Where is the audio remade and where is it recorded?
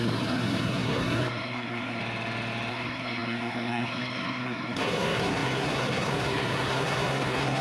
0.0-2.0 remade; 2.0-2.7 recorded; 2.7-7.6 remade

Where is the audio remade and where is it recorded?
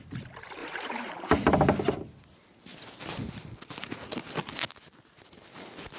0.0-0.6 recorded; 0.6-1.1 remade; 1.1-6.0 recorded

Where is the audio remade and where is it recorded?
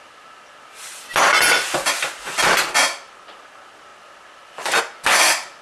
0.0-5.6 recorded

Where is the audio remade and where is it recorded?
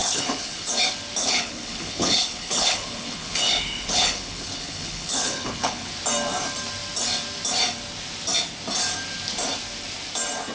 0.0-0.7 remade; 0.7-1.2 recorded; 1.2-5.9 remade; 5.9-10.5 recorded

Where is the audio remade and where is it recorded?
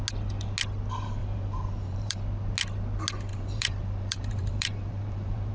0.0-1.2 recorded; 1.2-2.2 remade; 2.2-3.3 recorded; 3.3-5.5 remade